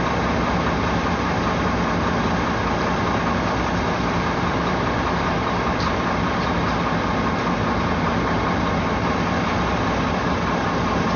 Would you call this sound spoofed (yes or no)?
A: yes